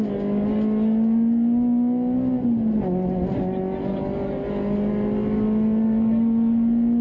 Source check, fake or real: real